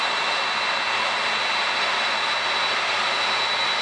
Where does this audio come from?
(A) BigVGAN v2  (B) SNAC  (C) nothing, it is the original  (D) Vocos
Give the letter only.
C